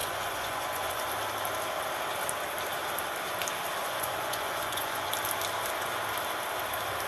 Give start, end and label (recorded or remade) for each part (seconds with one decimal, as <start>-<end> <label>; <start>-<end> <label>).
0.0-1.0 remade; 1.0-3.8 recorded; 3.8-5.1 remade; 5.1-7.1 recorded